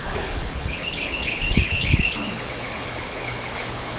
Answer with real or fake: fake